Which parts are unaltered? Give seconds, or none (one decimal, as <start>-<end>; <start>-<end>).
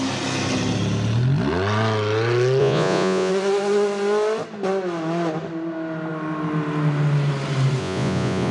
0.0-2.6; 3.3-7.8